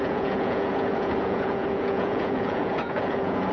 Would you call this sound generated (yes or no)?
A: yes